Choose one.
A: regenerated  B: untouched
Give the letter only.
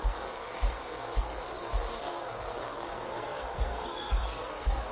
A